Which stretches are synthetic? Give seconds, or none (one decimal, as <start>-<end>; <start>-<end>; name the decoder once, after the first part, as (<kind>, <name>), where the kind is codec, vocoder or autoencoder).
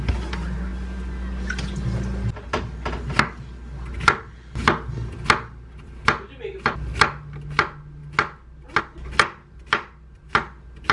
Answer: none